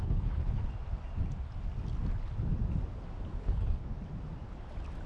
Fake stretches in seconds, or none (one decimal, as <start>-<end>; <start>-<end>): 0.0-0.6; 3.4-3.8